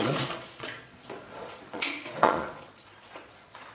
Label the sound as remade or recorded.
remade